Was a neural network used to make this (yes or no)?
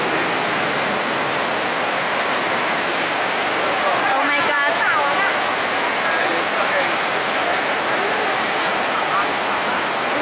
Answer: no